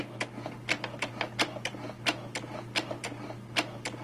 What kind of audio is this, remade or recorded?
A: recorded